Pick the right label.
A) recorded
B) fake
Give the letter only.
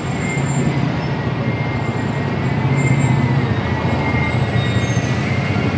A